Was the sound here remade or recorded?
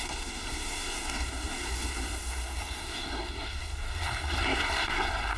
remade